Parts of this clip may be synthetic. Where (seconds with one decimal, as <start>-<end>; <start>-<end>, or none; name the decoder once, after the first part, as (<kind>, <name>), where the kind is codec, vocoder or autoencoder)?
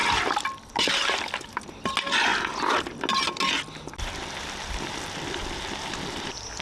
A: none